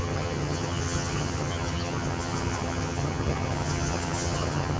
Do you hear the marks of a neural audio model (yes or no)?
yes